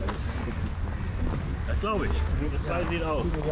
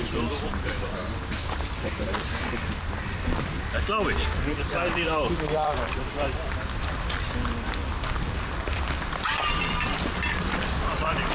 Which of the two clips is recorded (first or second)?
first